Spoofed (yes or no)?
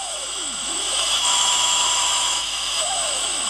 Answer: yes